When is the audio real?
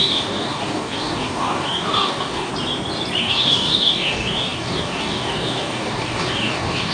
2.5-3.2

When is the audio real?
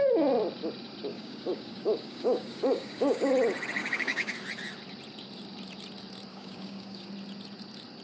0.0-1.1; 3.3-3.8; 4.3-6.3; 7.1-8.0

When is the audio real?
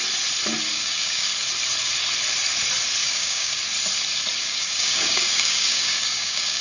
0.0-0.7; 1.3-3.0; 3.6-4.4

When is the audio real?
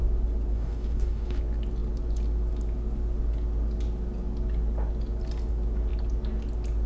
0.0-0.5; 1.4-6.9